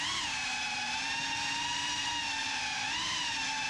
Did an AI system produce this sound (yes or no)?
yes